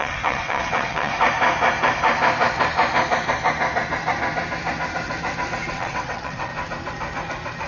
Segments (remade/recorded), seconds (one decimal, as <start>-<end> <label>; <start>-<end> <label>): 0.0-1.1 remade; 1.1-5.7 recorded; 5.7-6.5 remade; 6.5-7.7 recorded